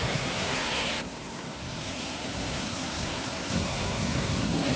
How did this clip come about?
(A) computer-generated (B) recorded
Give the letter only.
A